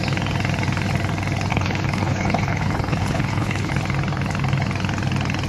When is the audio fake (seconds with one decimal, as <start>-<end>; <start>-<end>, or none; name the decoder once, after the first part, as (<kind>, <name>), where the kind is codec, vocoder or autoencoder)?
1.5-3.7 (codec, HILCodec)